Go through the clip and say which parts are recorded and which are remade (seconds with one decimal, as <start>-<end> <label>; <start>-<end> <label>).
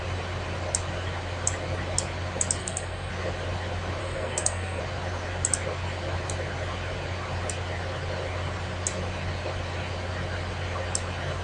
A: 0.0-2.6 recorded; 2.6-3.1 remade; 3.1-4.0 recorded; 4.0-4.8 remade; 4.8-11.4 recorded